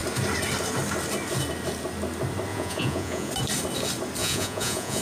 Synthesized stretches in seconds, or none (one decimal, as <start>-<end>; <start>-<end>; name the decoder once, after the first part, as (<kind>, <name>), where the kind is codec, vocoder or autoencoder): 2.5-3.3 (vocoder, Vocos); 4.2-5.0